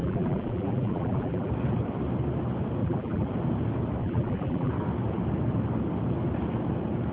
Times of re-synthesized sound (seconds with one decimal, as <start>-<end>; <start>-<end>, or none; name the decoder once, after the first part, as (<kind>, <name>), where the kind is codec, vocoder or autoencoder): 0.0-1.5 (vocoder, BigVGAN v2); 2.8-3.3; 4.0-4.7